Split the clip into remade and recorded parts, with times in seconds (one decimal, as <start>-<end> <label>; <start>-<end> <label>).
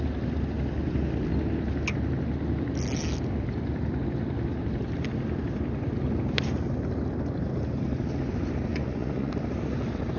0.0-8.7 recorded; 8.7-9.3 remade; 9.3-10.2 recorded